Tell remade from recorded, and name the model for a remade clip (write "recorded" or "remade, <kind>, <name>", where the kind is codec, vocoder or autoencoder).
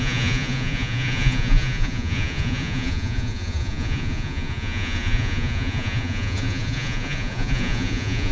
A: remade, vocoder, Vocos